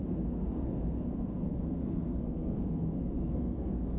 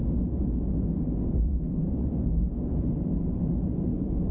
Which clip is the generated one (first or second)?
first